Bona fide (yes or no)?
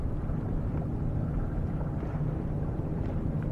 no